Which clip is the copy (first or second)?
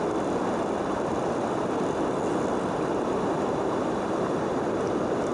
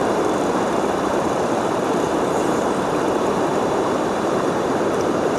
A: second